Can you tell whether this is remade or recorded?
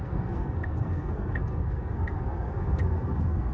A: remade